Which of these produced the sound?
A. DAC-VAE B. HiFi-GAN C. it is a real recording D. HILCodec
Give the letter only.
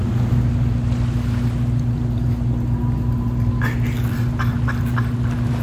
C